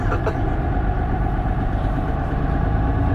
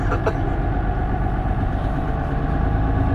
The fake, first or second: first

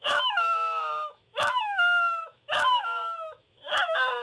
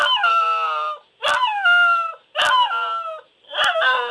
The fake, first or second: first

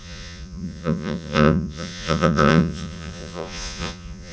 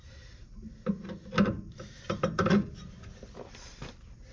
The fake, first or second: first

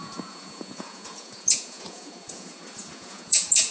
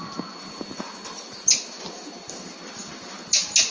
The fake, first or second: first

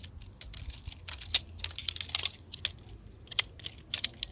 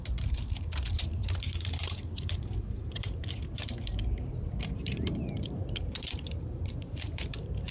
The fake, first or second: second